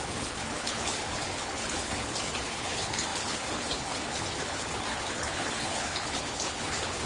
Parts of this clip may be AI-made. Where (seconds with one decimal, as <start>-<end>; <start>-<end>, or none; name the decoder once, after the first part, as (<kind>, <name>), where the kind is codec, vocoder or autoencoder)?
0.0-7.1 (codec, HILCodec)